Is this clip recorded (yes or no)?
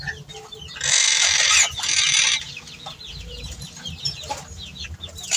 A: yes